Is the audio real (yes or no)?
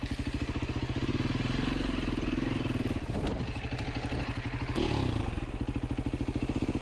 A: yes